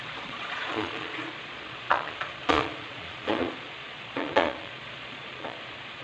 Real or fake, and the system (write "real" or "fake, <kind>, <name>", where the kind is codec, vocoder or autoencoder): fake, vocoder, Vocos